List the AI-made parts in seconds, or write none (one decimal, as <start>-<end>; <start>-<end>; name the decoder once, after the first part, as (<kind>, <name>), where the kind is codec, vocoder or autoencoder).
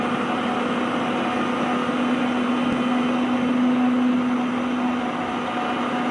none